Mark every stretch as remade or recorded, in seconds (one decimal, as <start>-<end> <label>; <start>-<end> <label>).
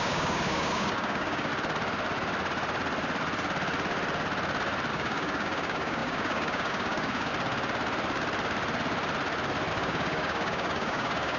0.0-1.5 remade; 1.5-4.9 recorded; 4.9-7.3 remade; 7.3-9.7 recorded; 9.7-11.4 remade